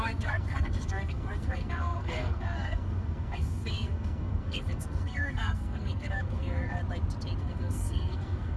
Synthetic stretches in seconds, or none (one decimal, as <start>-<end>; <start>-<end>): 0.0-6.8; 7.4-8.6